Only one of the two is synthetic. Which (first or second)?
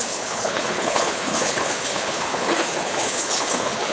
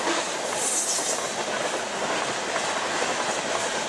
first